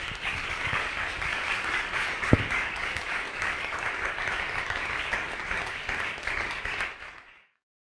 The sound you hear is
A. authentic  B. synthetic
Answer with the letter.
B